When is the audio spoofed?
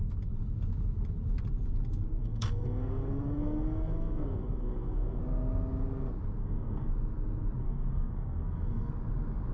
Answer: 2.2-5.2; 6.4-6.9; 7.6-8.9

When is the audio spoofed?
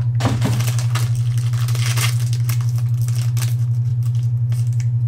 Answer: none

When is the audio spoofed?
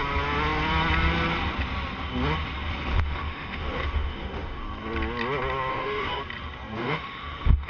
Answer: 2.9-4.6; 5.7-6.2; 6.8-7.7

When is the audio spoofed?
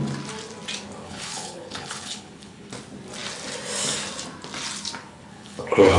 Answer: 1.0-2.7; 5.0-6.0